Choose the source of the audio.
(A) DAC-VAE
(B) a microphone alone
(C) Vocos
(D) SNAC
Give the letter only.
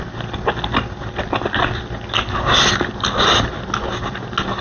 B